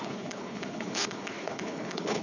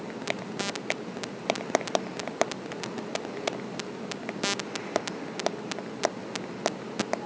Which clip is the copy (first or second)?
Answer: first